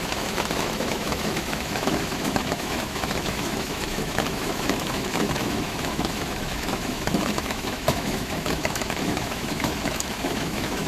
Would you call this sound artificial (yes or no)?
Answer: yes